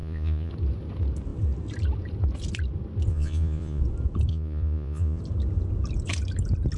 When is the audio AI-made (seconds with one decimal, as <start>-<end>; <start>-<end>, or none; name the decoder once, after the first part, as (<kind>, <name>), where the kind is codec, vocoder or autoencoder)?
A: 0.0-0.5 (vocoder, Vocos); 3.1-3.8; 4.3-5.2